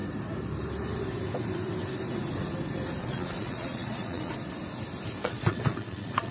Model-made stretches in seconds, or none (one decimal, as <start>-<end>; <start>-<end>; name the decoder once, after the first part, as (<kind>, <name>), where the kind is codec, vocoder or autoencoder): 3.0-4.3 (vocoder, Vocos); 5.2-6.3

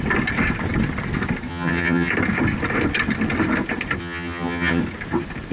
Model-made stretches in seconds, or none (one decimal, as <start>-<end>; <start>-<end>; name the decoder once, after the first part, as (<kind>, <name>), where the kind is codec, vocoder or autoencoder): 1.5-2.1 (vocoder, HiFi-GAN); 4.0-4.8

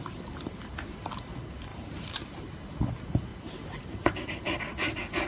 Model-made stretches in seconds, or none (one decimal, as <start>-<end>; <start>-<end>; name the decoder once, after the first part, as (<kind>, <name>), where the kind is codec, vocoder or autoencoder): 1.7-2.6 (vocoder, BigVGAN v2); 3.3-3.9

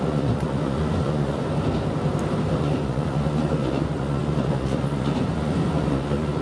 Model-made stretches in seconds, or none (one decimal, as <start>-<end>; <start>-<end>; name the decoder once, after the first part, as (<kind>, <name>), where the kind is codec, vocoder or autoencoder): 0.0-1.4 (vocoder, Vocos); 2.6-6.4

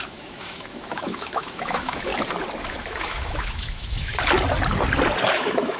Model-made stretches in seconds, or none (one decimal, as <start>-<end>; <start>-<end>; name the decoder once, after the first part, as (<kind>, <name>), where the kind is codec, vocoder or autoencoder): 0.0-2.1 (autoencoder, DAC-VAE); 2.6-4.1; 5.3-5.8

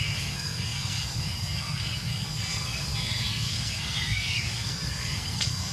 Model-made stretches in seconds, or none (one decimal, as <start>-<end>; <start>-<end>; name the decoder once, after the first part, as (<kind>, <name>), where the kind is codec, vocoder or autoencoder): 0.0-5.7 (codec, SNAC)